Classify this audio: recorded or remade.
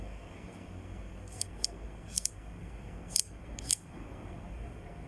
remade